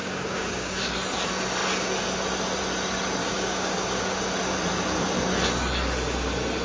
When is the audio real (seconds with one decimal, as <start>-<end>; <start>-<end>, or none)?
0.9-3.2; 4.2-6.6